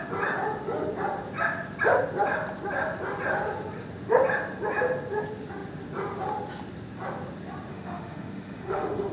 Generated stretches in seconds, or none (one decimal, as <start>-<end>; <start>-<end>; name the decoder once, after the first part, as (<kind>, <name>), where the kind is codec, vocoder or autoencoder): 7.7-9.1 (autoencoder, DAC-VAE)